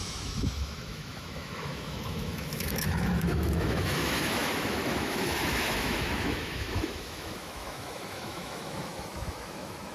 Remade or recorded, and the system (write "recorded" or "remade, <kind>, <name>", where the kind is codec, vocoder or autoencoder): remade, autoencoder, DAC-VAE